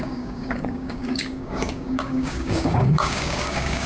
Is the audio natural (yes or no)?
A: no